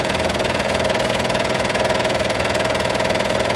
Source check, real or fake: fake